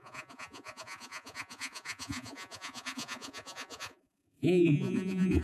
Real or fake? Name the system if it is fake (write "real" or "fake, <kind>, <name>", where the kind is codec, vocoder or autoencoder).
fake, vocoder, Vocos